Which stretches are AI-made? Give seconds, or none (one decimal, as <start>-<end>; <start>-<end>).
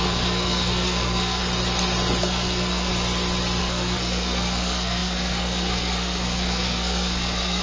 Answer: 0.0-1.4; 2.2-2.9; 3.6-7.6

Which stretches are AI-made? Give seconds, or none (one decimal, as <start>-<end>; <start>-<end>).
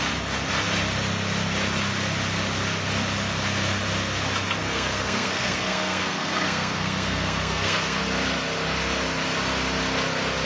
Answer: 4.6-8.0